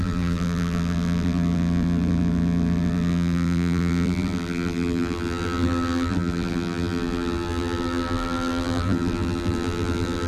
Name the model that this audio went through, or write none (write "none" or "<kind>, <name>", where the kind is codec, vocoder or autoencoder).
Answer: vocoder, BigVGAN v2